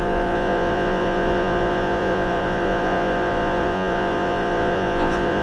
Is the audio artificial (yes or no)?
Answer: yes